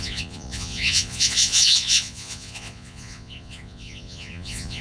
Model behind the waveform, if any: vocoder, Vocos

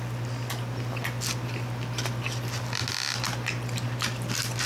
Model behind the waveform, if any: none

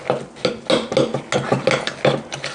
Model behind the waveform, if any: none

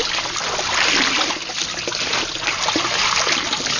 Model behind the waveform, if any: none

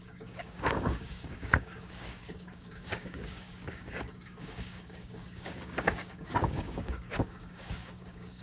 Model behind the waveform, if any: codec, DAC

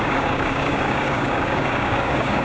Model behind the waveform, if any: codec, DAC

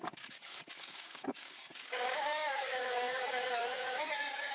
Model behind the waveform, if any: codec, DAC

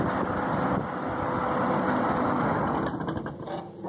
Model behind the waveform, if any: none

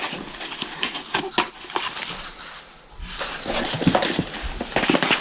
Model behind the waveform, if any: none